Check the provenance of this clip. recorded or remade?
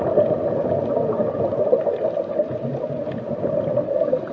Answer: recorded